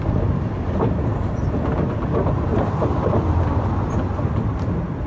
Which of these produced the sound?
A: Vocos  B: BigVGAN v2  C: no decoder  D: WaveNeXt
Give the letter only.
C